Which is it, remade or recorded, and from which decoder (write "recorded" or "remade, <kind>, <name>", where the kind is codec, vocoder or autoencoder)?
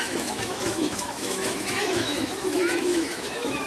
remade, autoencoder, DAC-VAE